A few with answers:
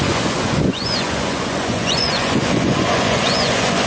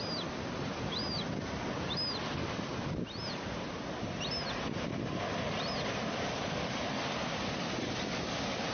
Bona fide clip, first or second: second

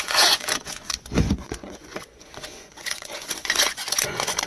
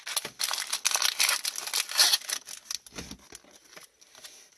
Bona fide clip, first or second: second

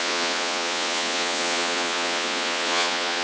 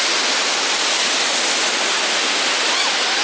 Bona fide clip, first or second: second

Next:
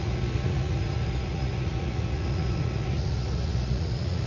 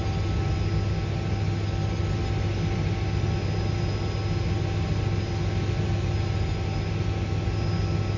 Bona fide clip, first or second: second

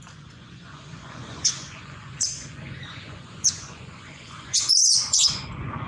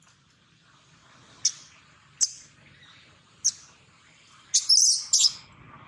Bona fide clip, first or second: second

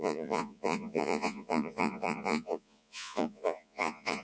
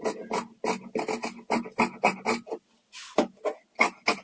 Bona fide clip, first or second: second